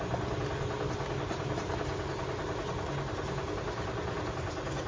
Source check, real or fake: real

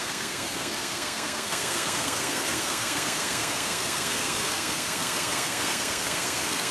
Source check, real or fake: fake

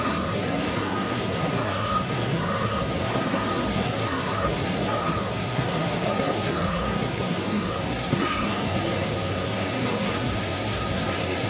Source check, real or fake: fake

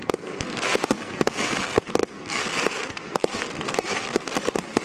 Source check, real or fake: fake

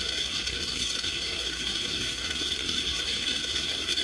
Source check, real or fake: fake